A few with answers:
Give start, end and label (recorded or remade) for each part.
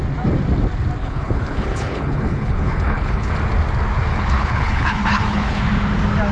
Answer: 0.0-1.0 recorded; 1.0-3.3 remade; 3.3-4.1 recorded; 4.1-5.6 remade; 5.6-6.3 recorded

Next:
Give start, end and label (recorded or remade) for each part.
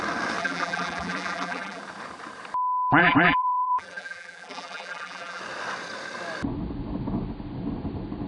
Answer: 0.0-0.4 recorded; 0.4-1.8 remade; 1.8-3.0 recorded; 3.0-5.4 remade; 5.4-8.3 recorded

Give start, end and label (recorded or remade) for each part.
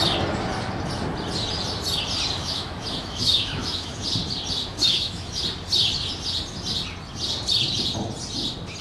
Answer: 0.0-2.4 recorded; 2.4-4.0 remade; 4.0-4.7 recorded; 4.7-5.4 remade; 5.4-8.8 recorded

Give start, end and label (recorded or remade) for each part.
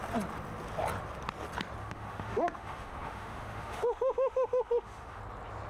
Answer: 0.0-1.8 recorded; 1.8-5.2 remade; 5.2-5.7 recorded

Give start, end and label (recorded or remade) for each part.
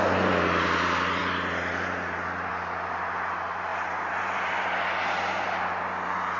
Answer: 0.0-6.4 recorded